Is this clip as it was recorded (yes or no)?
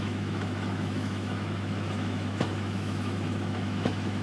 no